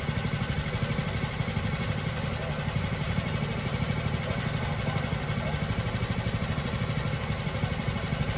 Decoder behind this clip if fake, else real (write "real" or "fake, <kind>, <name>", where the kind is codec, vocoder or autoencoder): real